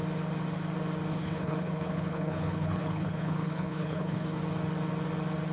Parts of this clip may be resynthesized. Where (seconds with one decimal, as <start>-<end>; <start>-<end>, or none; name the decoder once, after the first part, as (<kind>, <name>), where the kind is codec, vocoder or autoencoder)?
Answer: 1.1-4.4 (codec, HILCodec)